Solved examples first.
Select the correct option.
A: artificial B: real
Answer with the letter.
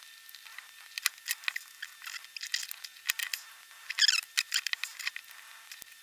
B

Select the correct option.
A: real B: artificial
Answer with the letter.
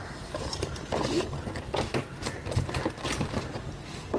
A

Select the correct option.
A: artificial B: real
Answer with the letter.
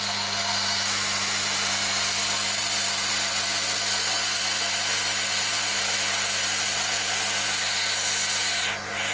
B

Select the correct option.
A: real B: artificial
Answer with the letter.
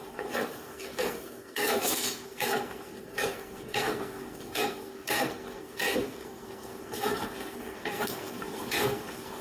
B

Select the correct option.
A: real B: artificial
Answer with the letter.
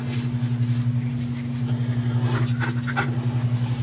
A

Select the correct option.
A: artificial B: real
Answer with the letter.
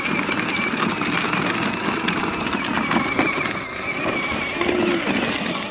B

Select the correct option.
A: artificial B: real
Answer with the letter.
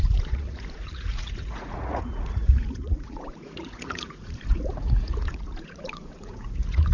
A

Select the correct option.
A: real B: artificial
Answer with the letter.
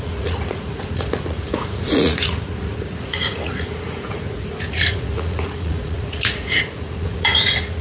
B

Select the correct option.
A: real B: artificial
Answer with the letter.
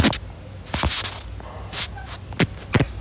A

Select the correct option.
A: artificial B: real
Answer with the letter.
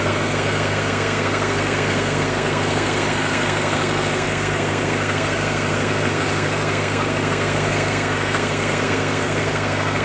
A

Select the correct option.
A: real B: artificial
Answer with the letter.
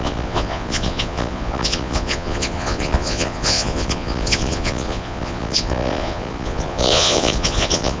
B